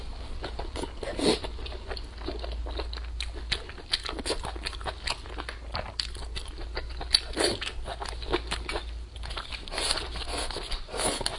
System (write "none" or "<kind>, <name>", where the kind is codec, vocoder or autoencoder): none